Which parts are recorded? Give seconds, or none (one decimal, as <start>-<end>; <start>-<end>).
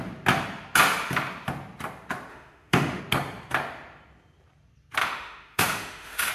0.0-2.3; 3.0-5.0